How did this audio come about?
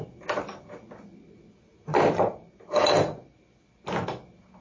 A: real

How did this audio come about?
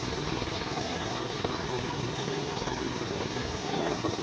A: fake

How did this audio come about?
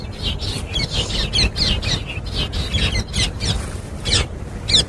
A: real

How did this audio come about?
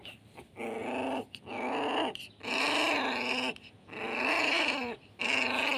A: fake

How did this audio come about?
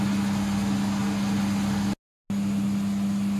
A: real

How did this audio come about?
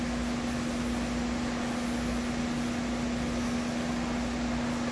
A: real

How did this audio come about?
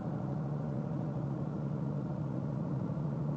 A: fake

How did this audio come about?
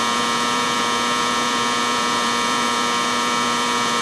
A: fake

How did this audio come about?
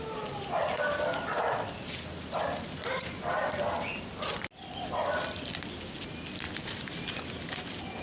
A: real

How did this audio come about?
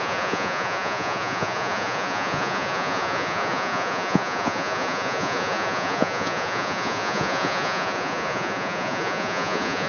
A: fake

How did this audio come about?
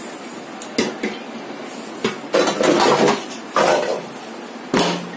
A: real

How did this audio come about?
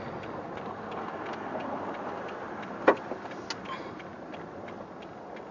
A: real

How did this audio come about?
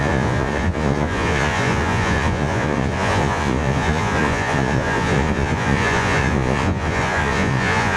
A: fake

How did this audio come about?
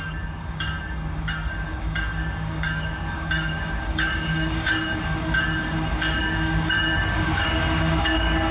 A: fake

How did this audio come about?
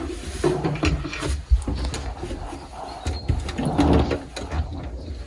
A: real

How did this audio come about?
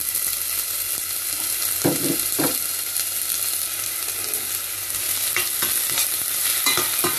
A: real